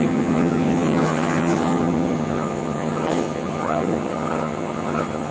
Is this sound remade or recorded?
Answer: remade